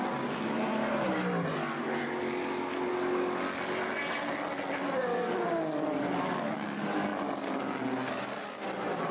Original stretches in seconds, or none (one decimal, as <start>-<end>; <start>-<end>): 0.0-9.1